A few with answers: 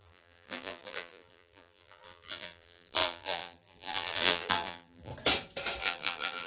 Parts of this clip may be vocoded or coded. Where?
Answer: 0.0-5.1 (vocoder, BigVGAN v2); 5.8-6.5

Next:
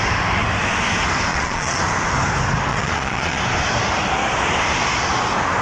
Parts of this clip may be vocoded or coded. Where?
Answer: 1.3-1.8 (vocoder, Vocos); 2.7-3.4

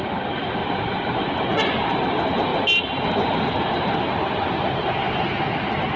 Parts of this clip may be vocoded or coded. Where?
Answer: 0.6-1.2 (vocoder, BigVGAN v2)

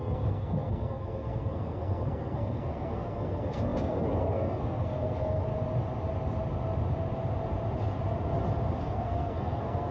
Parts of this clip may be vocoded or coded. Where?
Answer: 0.0-5.5 (codec, SNAC); 8.8-9.9

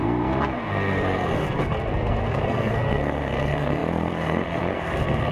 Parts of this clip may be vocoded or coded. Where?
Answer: 0.0-5.3 (codec, SNAC)

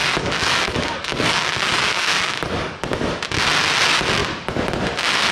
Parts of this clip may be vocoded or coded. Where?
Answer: 0.0-3.2 (codec, DAC)

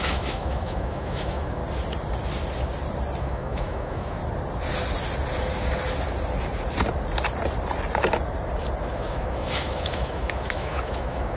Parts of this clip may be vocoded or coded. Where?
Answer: 0.0-1.6 (autoencoder, DAC-VAE); 3.2-4.2; 8.9-11.4